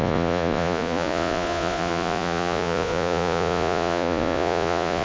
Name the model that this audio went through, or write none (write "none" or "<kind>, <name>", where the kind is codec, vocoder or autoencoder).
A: vocoder, Vocos